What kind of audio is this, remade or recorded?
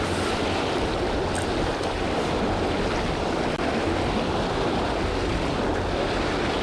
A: recorded